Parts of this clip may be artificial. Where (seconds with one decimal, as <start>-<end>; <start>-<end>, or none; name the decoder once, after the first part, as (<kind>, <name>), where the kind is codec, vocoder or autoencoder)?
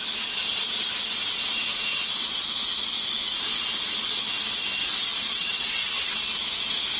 1.9-2.5 (vocoder, WaveNeXt); 4.8-6.2